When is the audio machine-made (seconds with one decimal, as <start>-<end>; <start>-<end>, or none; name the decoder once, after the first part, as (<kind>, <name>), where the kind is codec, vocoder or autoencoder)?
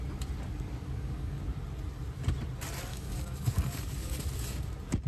0.5-1.4 (codec, DAC); 2.9-4.2